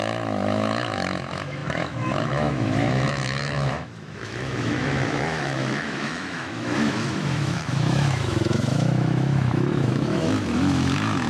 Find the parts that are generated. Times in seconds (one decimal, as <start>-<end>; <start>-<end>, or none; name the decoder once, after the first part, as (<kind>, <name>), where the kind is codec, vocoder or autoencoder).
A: 0.0-11.3 (autoencoder, DAC-VAE)